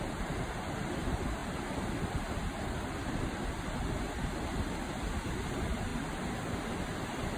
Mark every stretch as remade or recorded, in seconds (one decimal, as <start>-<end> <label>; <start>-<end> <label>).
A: 0.0-7.4 recorded